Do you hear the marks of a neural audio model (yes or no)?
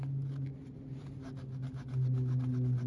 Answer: no